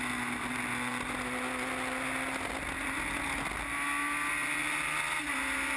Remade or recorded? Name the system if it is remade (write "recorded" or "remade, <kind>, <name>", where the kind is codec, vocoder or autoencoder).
recorded